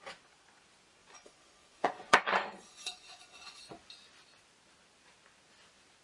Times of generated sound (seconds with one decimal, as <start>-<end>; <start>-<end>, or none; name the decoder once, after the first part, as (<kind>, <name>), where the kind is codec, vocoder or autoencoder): 1.0-3.6 (vocoder, Vocos)